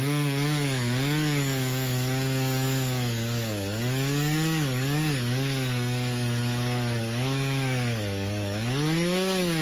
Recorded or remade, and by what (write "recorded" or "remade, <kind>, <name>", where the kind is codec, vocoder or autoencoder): remade, codec, DAC